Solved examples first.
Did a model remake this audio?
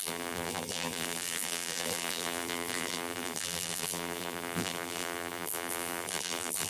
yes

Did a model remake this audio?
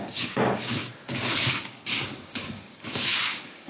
yes